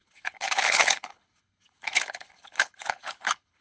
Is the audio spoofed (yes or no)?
yes